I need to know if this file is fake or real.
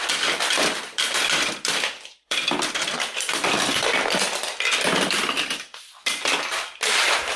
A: fake